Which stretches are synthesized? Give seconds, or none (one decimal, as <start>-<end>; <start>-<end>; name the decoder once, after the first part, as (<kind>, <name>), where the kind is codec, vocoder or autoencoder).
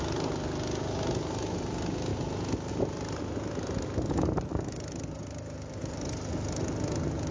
none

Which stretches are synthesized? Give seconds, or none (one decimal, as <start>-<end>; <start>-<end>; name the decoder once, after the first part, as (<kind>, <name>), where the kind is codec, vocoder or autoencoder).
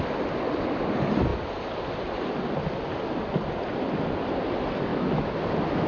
4.9-5.4 (autoencoder, DAC-VAE)